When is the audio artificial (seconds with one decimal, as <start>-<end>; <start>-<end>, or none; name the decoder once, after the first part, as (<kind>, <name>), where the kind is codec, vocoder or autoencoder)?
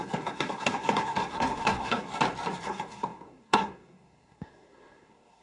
0.0-2.1 (codec, SNAC); 2.6-5.4